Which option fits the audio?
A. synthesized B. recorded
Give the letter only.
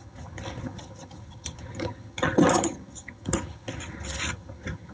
A